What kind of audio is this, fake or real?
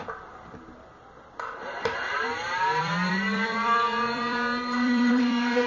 fake